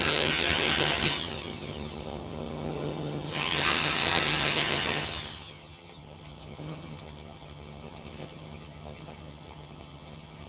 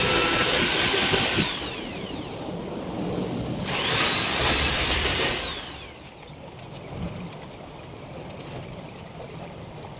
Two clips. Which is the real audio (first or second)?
second